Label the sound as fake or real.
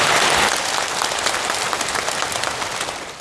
real